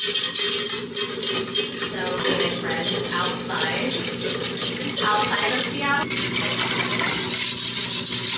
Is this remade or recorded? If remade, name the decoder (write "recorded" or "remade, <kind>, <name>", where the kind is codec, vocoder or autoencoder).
recorded